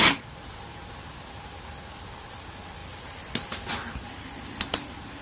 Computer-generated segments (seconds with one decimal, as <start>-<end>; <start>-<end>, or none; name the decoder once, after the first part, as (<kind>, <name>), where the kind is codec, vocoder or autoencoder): none

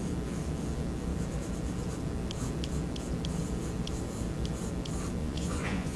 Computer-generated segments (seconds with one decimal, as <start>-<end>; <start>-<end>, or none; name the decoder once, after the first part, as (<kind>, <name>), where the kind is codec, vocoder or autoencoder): 5.2-6.0 (vocoder, Vocos)